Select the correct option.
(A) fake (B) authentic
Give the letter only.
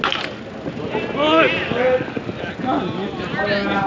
B